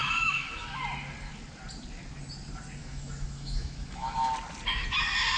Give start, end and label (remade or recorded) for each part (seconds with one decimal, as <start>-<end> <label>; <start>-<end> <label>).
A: 0.0-0.8 remade; 0.8-2.8 recorded; 2.8-4.3 remade; 4.3-5.4 recorded